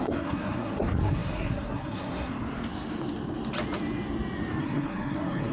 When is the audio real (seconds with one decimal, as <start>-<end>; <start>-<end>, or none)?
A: 2.3-4.6